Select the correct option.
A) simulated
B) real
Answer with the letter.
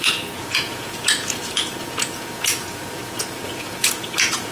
A